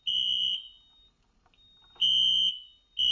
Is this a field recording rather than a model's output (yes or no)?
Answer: yes